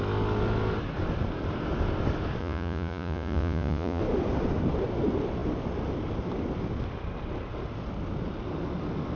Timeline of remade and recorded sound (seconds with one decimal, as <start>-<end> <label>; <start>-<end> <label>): 0.0-2.4 recorded; 2.4-4.0 remade; 4.0-9.2 recorded